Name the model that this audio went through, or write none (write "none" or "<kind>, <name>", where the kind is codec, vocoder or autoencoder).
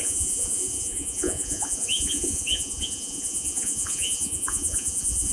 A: vocoder, Vocos